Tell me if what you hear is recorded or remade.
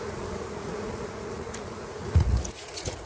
remade